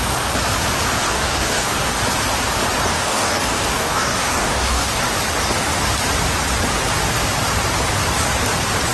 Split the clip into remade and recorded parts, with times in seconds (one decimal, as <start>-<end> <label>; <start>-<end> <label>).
0.0-1.0 recorded; 1.0-2.0 remade; 2.0-2.9 recorded; 2.9-5.0 remade; 5.0-8.9 recorded